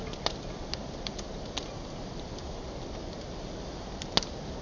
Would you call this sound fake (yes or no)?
no